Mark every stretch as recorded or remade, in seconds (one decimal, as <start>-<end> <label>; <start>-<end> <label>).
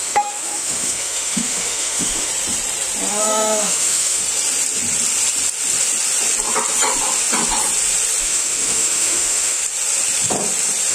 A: 0.0-2.3 remade; 2.3-3.1 recorded; 3.1-4.2 remade; 4.2-8.2 recorded; 8.2-9.6 remade; 9.6-10.9 recorded